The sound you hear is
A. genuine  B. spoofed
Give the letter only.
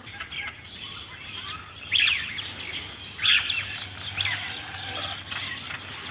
A